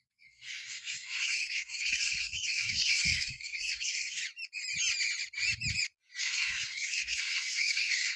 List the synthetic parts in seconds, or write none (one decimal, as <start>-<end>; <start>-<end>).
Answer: 0.0-4.2; 6.2-8.2